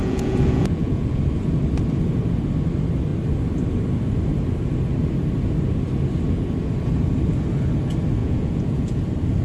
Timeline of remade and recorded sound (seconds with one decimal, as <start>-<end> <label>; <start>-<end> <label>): 0.0-1.2 remade; 1.2-8.2 recorded; 8.2-9.0 remade; 9.0-9.4 recorded

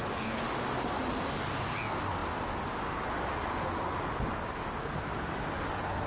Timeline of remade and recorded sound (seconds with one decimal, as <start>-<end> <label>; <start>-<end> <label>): 0.0-6.1 recorded

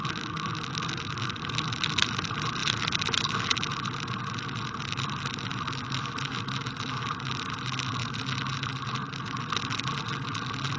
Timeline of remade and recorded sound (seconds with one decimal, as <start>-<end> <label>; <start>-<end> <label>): 0.0-10.8 recorded

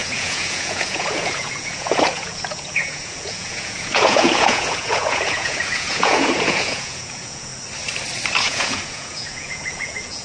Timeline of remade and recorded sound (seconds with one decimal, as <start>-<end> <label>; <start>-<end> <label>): 0.0-7.5 remade; 7.5-8.4 recorded; 8.4-10.2 remade

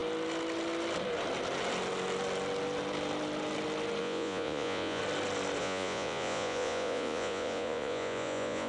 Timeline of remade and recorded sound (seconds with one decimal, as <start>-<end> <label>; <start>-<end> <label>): 0.0-4.0 recorded; 4.0-5.0 remade; 5.0-5.6 recorded; 5.6-8.7 remade

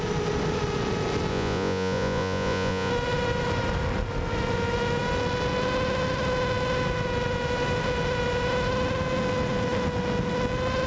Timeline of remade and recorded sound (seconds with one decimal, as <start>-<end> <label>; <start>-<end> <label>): 0.0-1.3 recorded; 1.3-2.9 remade; 2.9-10.9 recorded

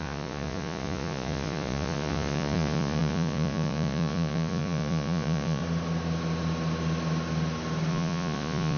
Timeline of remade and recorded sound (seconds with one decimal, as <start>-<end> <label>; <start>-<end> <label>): 0.0-5.6 remade; 5.6-7.9 recorded; 7.9-8.8 remade

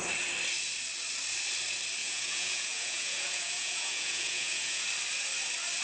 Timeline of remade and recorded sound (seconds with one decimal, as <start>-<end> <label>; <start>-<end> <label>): 0.0-2.0 recorded; 2.0-4.8 remade; 4.8-5.8 recorded